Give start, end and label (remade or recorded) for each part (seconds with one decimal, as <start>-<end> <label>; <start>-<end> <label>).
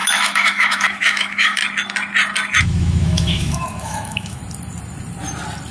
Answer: 0.0-1.6 remade; 1.6-2.6 recorded; 2.6-4.4 remade; 4.4-5.7 recorded